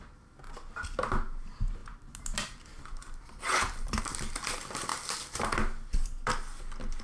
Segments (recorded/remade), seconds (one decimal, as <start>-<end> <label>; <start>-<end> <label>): 0.0-1.8 recorded; 1.8-4.0 remade; 4.0-7.0 recorded